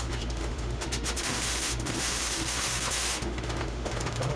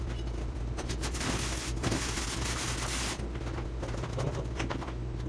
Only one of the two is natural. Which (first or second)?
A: second